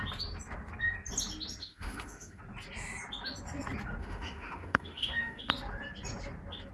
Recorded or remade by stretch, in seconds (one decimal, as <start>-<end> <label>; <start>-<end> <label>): 0.0-1.6 recorded; 1.6-2.4 remade; 2.4-4.0 recorded; 4.0-5.5 remade; 5.5-6.7 recorded